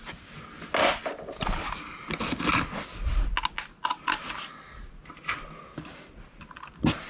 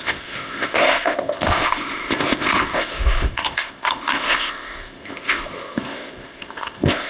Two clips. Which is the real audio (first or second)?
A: first